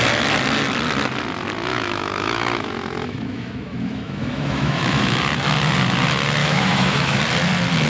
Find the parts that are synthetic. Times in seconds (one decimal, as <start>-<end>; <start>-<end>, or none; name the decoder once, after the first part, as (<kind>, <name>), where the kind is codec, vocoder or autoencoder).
1.7-5.2 (autoencoder, DAC-VAE); 6.4-7.2